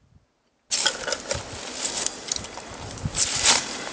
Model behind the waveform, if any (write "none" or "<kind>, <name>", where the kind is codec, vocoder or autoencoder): none